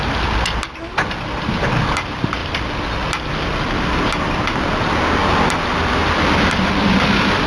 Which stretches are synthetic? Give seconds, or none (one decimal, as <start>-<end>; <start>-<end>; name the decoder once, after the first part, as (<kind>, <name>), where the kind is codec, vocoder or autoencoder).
none